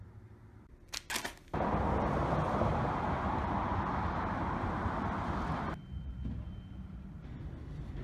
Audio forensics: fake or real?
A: real